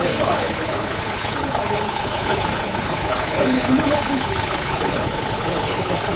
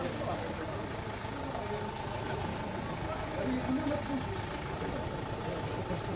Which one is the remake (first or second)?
first